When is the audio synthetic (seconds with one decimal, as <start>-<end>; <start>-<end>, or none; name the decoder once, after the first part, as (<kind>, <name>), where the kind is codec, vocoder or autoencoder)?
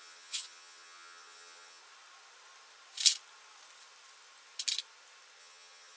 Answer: 0.0-1.8 (vocoder, HiFi-GAN); 5.4-6.0